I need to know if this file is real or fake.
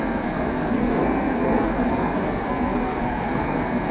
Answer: fake